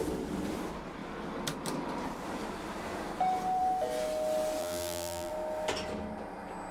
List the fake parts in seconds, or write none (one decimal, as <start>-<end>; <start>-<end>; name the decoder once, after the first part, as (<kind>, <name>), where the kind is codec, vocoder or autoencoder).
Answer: 4.6-5.3 (vocoder, BigVGAN v2)